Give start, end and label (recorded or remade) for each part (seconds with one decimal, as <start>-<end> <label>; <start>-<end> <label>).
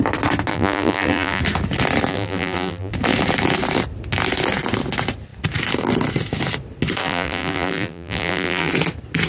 0.0-0.5 recorded; 0.5-1.4 remade; 1.4-2.1 recorded; 2.1-2.9 remade; 2.9-7.0 recorded; 7.0-8.7 remade; 8.7-9.3 recorded